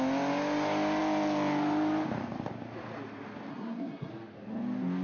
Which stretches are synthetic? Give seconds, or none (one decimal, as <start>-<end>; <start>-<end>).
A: 3.5-4.1